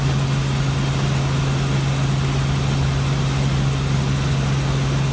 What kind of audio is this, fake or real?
real